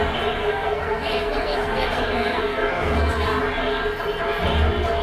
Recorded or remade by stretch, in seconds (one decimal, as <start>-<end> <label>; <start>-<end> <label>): 0.0-0.4 recorded; 0.4-3.4 remade; 3.4-5.0 recorded